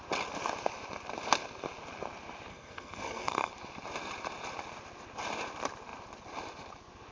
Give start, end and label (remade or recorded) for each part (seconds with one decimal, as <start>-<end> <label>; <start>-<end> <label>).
0.0-2.5 recorded; 2.5-3.5 remade; 3.5-7.1 recorded